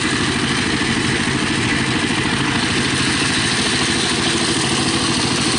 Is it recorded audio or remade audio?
recorded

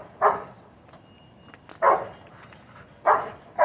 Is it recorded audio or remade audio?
recorded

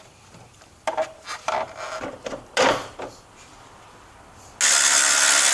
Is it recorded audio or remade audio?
recorded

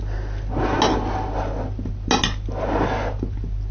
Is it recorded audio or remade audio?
recorded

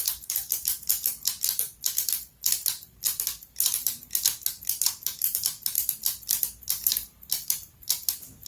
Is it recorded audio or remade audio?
recorded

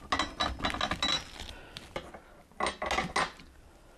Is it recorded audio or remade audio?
recorded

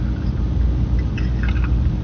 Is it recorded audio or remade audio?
recorded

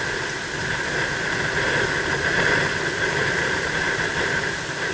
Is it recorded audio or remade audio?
recorded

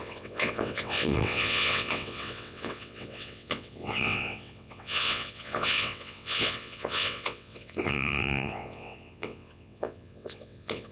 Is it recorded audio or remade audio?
remade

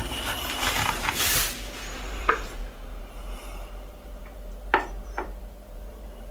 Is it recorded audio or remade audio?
remade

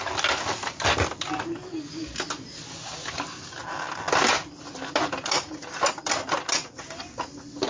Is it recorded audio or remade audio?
recorded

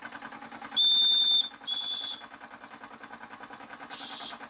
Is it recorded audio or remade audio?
recorded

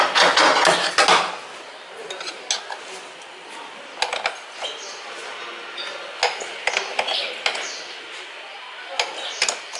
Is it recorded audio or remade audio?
recorded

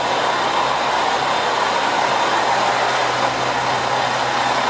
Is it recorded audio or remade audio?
recorded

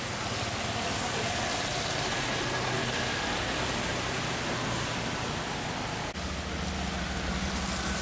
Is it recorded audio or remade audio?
recorded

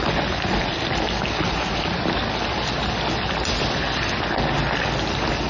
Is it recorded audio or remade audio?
recorded